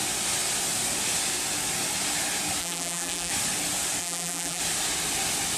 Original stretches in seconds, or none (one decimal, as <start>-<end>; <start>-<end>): 0.0-2.6; 3.3-4.0; 4.6-5.6